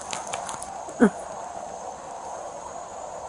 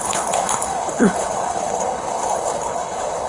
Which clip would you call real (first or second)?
first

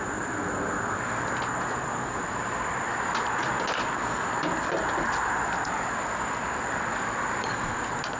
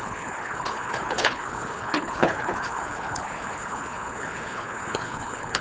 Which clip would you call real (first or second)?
first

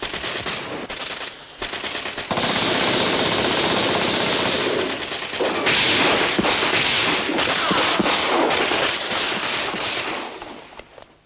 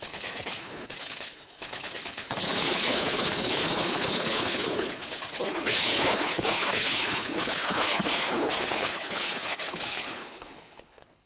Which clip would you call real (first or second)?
first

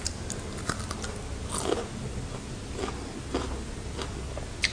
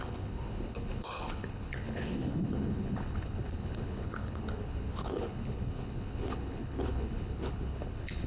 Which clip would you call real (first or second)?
first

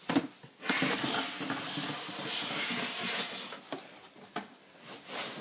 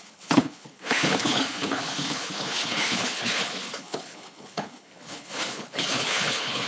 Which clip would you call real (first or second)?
first